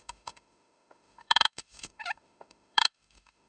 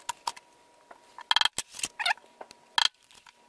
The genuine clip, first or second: second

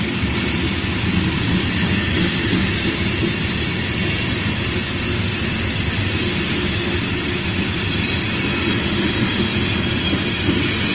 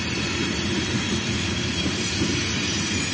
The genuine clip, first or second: first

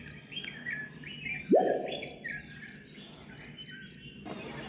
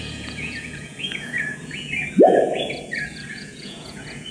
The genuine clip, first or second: first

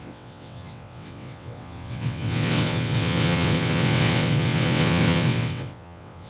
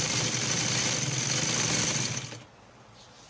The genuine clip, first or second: second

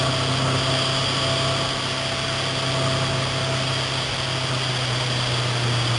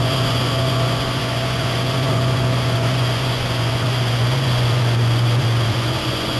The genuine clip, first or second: first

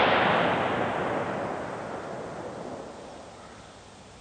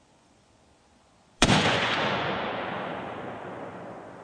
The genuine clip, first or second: first